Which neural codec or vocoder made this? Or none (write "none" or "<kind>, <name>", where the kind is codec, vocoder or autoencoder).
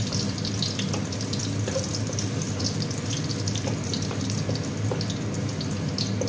none